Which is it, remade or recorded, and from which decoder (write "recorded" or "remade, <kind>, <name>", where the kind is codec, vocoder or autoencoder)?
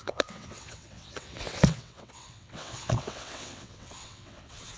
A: remade, vocoder, WaveNeXt